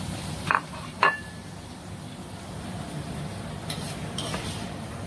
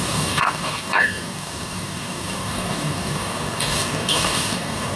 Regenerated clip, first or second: second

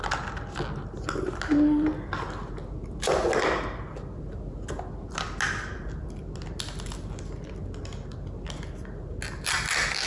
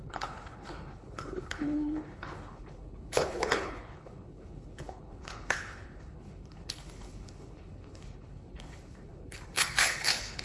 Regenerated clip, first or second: second